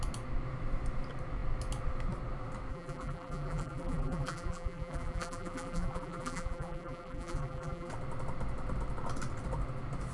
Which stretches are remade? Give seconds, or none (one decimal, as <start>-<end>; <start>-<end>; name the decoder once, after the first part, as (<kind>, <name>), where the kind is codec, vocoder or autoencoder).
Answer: 2.7-7.9 (vocoder, BigVGAN v2)

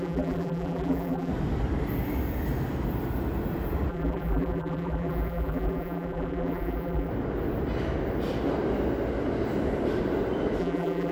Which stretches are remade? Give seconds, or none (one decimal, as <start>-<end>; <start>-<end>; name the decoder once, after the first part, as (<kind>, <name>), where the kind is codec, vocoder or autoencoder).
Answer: 0.0-1.3 (vocoder, BigVGAN v2); 3.9-7.1; 10.6-11.1

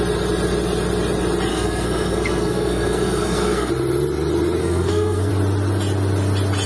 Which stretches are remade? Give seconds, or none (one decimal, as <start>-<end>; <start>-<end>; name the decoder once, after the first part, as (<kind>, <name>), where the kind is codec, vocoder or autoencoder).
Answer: 1.5-3.7 (codec, SNAC); 4.6-5.3

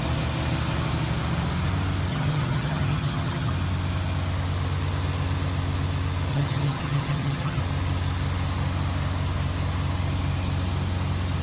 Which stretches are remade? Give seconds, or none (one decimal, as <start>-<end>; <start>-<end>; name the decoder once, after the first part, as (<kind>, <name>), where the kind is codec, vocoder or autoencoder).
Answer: 2.1-3.5 (vocoder, HiFi-GAN); 6.3-7.6

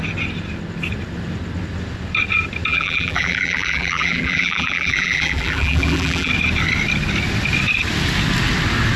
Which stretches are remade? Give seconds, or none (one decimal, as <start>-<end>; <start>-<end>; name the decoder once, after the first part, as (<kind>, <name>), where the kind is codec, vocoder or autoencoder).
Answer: 2.7-6.3 (vocoder, BigVGAN v2)

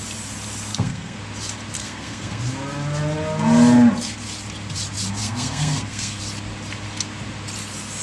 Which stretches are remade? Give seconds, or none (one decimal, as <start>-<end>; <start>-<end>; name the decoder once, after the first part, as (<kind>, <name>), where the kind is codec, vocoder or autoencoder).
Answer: 0.7-1.2 (codec, SNAC); 1.8-2.4; 5.2-6.2

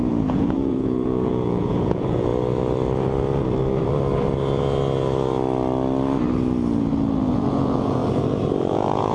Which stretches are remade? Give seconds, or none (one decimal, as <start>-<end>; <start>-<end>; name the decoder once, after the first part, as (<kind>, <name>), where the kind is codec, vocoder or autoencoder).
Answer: 0.0-2.3 (vocoder, Vocos); 7.3-8.0; 8.6-9.1

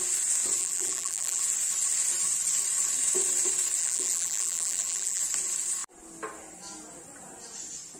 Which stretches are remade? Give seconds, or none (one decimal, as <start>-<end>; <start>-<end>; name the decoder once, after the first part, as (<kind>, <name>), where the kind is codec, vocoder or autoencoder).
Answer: 0.6-1.4 (vocoder, BigVGAN v2); 3.8-5.2